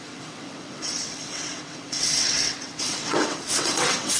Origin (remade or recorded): remade